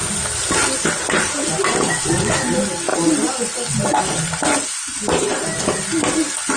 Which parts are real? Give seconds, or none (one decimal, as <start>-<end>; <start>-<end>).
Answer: 0.0-6.6